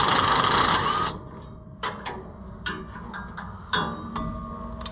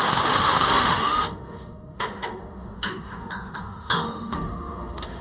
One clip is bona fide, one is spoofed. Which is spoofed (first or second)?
second